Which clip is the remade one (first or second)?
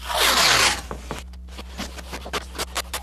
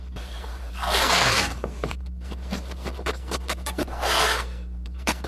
second